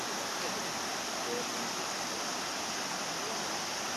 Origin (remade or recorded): recorded